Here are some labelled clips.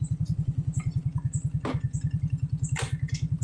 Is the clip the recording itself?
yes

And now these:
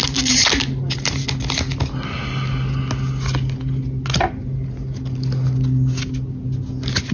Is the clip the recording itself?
yes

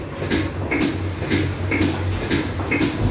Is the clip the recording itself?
yes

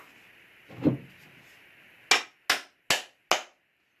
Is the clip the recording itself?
yes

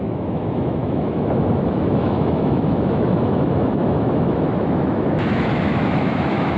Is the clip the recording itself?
no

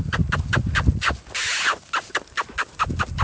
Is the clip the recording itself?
yes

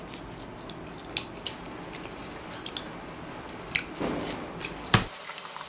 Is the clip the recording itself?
yes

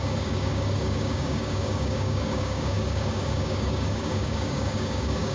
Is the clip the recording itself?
no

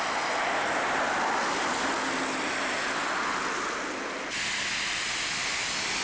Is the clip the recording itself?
yes